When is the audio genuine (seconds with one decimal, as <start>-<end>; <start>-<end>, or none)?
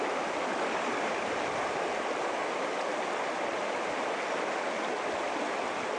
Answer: 0.0-6.0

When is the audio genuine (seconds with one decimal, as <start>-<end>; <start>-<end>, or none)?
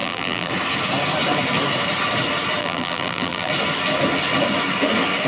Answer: 0.5-2.6; 3.5-5.3